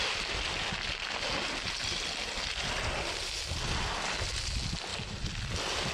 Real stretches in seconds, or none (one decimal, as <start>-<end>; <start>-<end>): 0.0-5.9